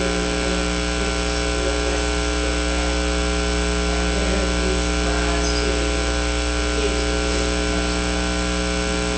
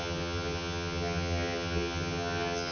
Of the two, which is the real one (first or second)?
first